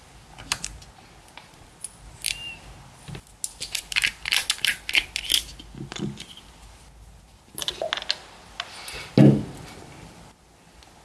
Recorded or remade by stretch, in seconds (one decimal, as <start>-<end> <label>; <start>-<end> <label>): 0.0-11.0 recorded